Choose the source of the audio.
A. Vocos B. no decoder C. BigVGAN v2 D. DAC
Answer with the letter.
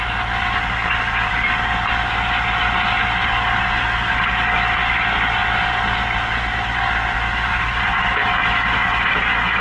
B